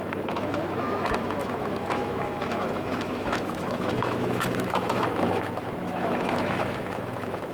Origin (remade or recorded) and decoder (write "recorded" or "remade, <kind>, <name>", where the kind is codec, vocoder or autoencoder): remade, autoencoder, DAC-VAE